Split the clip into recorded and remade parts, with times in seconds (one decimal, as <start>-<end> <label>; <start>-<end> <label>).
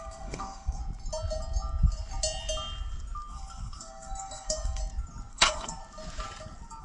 0.0-0.8 remade; 0.8-3.3 recorded; 3.3-4.8 remade; 4.8-5.3 recorded; 5.3-5.8 remade; 5.8-6.8 recorded